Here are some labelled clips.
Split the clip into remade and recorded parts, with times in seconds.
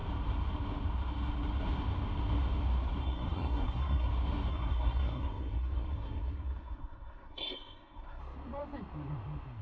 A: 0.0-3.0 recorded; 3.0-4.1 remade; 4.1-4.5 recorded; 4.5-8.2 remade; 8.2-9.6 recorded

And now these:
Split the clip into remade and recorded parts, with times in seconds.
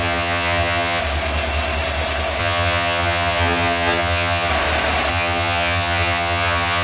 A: 0.0-1.0 remade; 1.0-2.4 recorded; 2.4-4.5 remade; 4.5-5.1 recorded; 5.1-6.8 remade